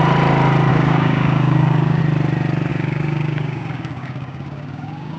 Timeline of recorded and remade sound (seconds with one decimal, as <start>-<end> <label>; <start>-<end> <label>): 0.0-0.7 recorded; 0.7-2.0 remade; 2.0-2.7 recorded; 2.7-5.2 remade